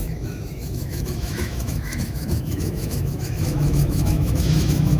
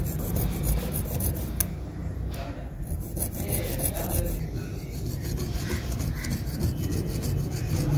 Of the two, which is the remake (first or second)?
first